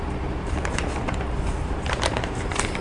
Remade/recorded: remade